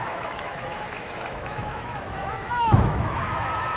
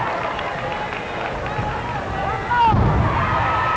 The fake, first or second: first